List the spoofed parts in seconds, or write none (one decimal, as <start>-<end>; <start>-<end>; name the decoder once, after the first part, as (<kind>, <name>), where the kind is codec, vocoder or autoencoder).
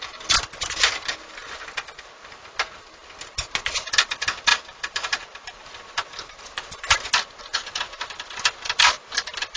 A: none